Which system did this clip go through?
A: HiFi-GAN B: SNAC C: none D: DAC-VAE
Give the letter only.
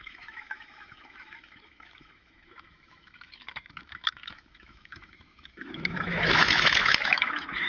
D